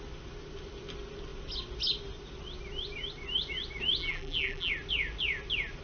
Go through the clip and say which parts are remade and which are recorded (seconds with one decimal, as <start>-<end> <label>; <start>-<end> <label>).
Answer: 0.0-4.0 recorded; 4.0-4.7 remade; 4.7-5.8 recorded